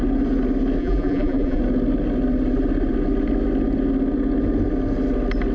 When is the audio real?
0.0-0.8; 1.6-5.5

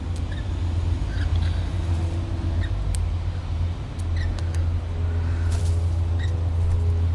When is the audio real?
0.0-7.1